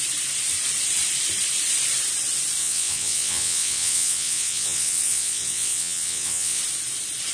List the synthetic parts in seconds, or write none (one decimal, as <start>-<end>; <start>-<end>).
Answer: 2.6-6.6